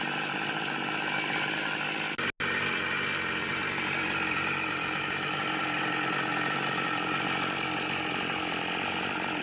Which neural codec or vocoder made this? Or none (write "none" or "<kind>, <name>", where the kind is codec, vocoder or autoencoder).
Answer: none